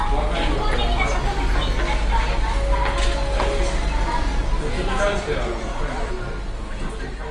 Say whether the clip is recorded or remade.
recorded